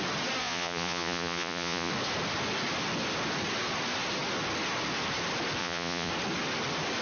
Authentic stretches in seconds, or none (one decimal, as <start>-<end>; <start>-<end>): 0.0-0.4; 1.9-5.6; 6.1-7.0